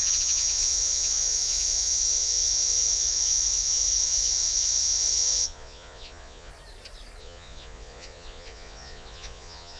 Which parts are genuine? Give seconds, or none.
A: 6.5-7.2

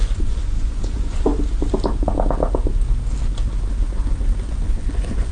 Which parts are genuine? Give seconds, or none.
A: 1.3-4.5

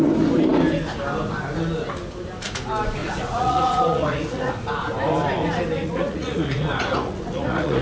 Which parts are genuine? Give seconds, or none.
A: 0.0-3.0; 4.5-5.8